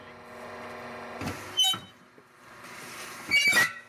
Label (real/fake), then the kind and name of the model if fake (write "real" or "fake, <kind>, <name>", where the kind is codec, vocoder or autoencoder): real